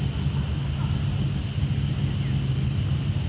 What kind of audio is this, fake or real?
real